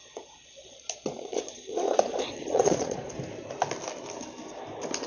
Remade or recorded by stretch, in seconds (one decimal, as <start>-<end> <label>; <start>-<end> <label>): 0.0-3.1 remade; 3.1-5.1 recorded